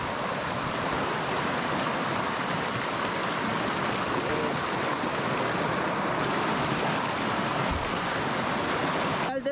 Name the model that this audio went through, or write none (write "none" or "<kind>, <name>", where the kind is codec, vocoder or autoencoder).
none